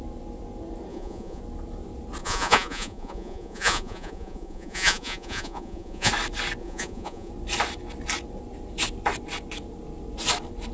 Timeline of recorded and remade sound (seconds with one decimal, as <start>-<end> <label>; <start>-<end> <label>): 0.0-0.9 recorded; 0.9-1.4 remade; 1.4-2.2 recorded; 2.2-6.1 remade; 6.1-6.6 recorded; 6.6-7.3 remade; 7.3-10.7 recorded